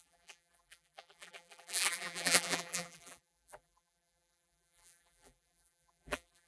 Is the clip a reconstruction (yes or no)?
yes